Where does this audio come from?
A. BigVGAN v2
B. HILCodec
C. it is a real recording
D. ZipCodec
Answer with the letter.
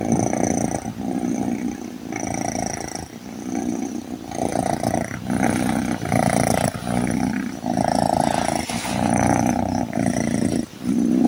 C